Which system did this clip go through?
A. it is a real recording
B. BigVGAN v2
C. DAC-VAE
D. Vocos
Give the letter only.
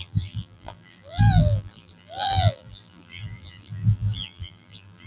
B